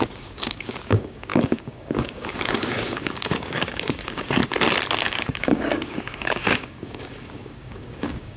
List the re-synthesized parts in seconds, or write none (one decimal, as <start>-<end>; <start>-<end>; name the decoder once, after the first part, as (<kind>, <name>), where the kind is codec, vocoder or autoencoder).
0.0-4.4 (codec, DAC); 5.0-8.4